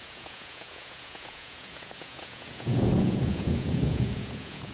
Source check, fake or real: fake